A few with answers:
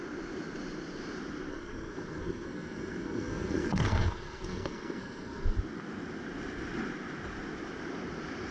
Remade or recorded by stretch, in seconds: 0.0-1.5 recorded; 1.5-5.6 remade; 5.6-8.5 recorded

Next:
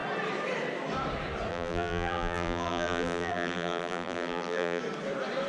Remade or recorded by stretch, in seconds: 0.0-1.5 recorded; 1.5-4.8 remade; 4.8-5.5 recorded

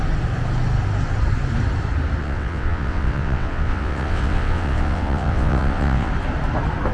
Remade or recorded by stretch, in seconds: 0.0-2.2 recorded; 2.2-6.1 remade; 6.1-6.9 recorded

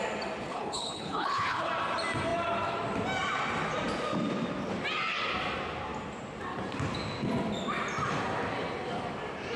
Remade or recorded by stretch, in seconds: 0.0-0.5 recorded; 0.5-1.7 remade; 1.7-9.6 recorded

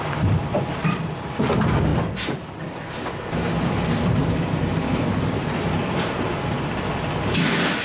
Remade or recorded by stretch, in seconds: 0.0-1.9 remade; 1.9-3.6 recorded; 3.6-7.8 remade